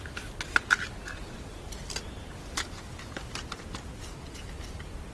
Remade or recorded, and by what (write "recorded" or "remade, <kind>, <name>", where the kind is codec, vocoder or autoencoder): recorded